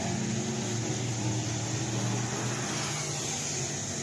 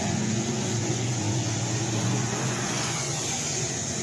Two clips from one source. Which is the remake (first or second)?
second